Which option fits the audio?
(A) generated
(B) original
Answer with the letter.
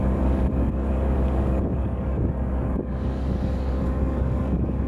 A